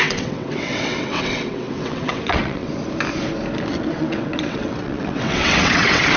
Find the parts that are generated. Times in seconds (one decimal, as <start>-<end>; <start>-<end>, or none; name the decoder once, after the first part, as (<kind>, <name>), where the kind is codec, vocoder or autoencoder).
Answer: 0.0-2.7 (vocoder, WaveNeXt); 3.7-6.2